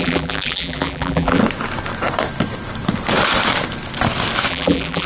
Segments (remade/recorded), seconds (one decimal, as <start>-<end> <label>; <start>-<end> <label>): 0.0-1.4 remade; 1.4-4.5 recorded; 4.5-5.1 remade